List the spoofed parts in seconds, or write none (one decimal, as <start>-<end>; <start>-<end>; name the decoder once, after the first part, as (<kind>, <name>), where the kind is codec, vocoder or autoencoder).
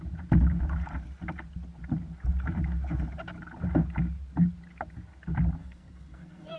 5.6-6.6 (codec, SNAC)